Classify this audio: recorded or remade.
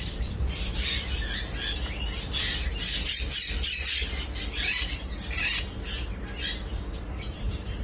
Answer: recorded